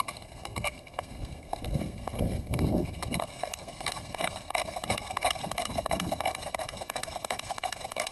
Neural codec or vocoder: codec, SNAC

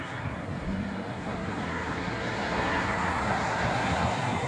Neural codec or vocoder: codec, SNAC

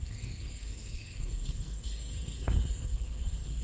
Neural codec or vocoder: codec, SNAC